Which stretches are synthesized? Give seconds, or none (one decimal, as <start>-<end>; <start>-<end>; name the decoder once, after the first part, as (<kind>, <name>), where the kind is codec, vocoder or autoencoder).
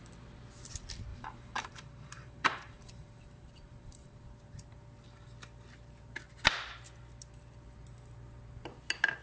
1.1-4.2 (vocoder, BigVGAN v2)